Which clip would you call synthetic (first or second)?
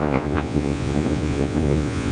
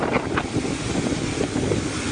first